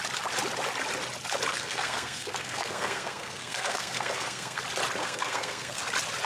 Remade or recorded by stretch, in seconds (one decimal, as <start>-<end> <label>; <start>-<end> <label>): 0.0-1.5 recorded; 1.5-4.6 remade; 4.6-5.0 recorded; 5.0-5.8 remade; 5.8-6.2 recorded